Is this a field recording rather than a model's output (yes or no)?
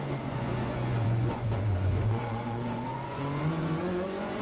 no